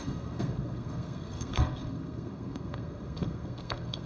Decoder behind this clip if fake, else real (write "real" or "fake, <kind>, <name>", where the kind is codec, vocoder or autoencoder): fake, codec, SNAC